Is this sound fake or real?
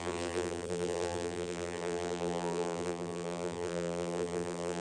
fake